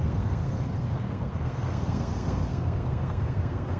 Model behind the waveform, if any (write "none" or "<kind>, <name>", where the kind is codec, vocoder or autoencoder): codec, SNAC